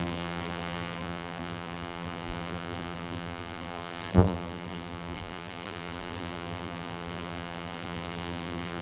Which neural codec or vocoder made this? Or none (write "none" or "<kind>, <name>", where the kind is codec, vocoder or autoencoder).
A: vocoder, BigVGAN v2